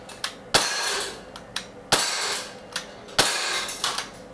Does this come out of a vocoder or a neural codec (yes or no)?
no